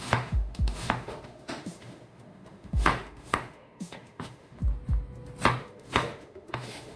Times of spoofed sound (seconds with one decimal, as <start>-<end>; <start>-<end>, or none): 0.0-4.6; 5.6-7.0